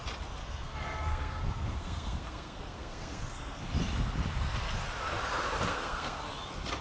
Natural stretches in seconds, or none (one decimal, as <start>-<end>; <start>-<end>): 0.0-0.4; 3.6-5.7; 6.2-6.8